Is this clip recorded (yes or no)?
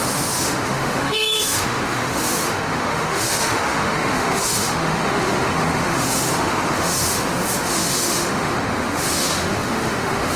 no